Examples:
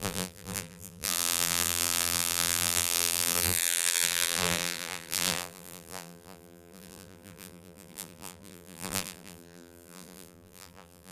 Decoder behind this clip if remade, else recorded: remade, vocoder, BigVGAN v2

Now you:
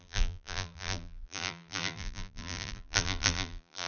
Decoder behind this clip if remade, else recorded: remade, vocoder, BigVGAN v2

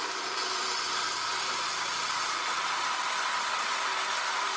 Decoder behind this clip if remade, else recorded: remade, vocoder, BigVGAN v2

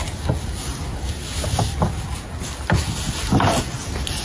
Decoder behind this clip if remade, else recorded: recorded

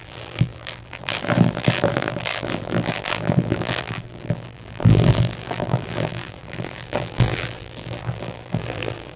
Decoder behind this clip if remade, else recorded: remade, vocoder, BigVGAN v2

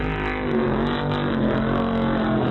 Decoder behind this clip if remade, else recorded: recorded